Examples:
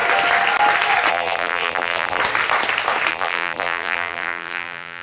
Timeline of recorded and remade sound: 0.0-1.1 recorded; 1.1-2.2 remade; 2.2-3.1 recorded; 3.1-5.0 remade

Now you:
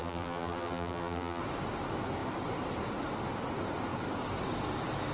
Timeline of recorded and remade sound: 0.0-1.4 remade; 1.4-5.1 recorded

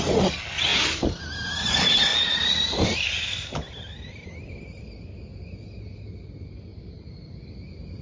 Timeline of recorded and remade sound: 0.0-0.7 recorded; 0.7-1.2 remade; 1.2-2.1 recorded; 2.1-4.1 remade; 4.1-6.7 recorded; 6.7-7.5 remade; 7.5-8.0 recorded